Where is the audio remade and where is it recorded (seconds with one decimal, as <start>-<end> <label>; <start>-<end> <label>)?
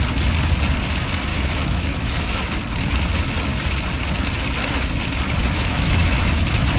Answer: 0.0-1.3 recorded; 1.3-2.5 remade; 2.5-5.4 recorded; 5.4-6.8 remade